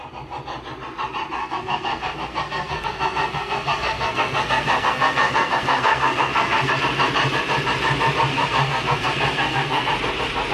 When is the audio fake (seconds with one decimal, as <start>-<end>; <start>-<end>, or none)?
1.4-6.7; 8.3-9.9